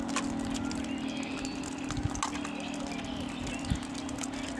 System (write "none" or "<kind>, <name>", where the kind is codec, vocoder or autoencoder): none